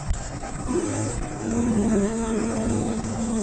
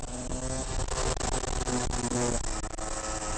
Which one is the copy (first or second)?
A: first